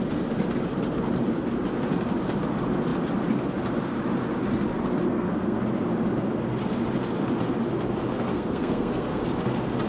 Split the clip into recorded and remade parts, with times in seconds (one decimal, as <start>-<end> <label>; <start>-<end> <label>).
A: 0.0-5.1 recorded; 5.1-5.6 remade; 5.6-8.3 recorded; 8.3-9.2 remade; 9.2-9.9 recorded

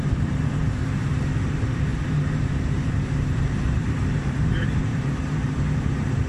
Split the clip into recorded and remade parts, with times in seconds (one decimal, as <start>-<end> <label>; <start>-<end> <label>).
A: 0.0-6.3 remade

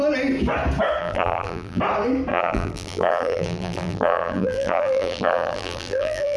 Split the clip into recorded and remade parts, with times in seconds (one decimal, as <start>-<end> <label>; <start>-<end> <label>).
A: 0.0-1.0 recorded; 1.0-1.8 remade; 1.8-2.3 recorded; 2.3-6.4 remade

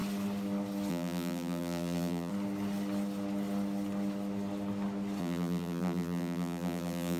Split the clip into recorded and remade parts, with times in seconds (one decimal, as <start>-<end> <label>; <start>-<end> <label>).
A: 0.0-0.9 recorded; 0.9-2.3 remade; 2.3-5.2 recorded; 5.2-7.2 remade

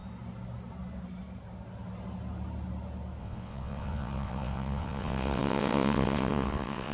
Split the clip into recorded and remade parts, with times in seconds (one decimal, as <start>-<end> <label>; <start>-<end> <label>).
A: 0.0-3.2 recorded; 3.2-6.9 remade

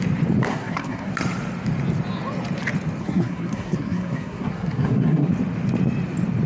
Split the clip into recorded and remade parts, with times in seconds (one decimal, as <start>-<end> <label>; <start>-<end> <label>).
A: 0.0-0.5 recorded; 0.5-1.1 remade; 1.1-3.0 recorded; 3.0-5.3 remade; 5.3-6.5 recorded

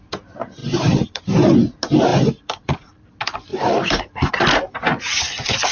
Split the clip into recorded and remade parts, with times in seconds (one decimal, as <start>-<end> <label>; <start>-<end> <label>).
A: 0.0-0.6 recorded; 0.6-1.3 remade; 1.3-2.1 recorded; 2.1-3.1 remade; 3.1-3.5 recorded; 3.5-4.3 remade; 4.3-5.7 recorded